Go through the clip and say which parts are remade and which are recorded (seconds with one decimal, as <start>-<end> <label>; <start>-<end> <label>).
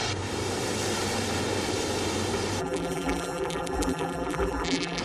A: 0.0-2.6 recorded; 2.6-5.0 remade